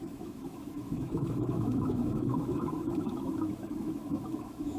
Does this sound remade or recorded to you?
remade